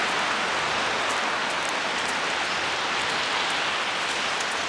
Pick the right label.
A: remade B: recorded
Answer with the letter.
B